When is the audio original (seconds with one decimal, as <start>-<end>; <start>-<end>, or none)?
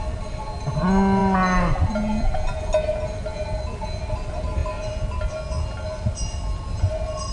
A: 0.0-7.3